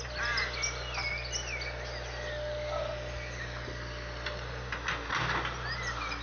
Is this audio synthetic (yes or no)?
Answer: no